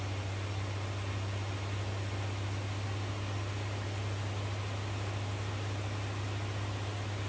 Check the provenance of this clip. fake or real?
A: real